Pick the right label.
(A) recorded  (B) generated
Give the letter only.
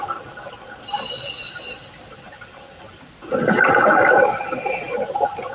A